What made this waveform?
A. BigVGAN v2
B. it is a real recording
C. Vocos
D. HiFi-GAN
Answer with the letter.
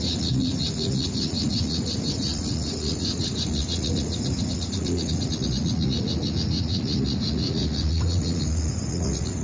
C